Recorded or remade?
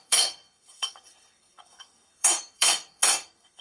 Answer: remade